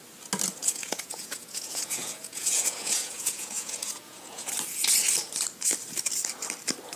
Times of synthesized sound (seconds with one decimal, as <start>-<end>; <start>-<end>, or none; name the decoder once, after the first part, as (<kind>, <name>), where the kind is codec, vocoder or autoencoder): 0.6-4.5 (vocoder, Vocos)